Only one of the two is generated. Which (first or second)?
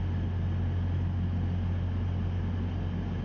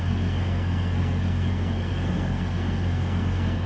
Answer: second